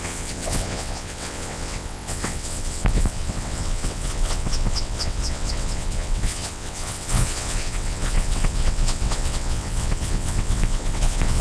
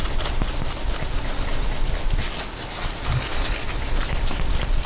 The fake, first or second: first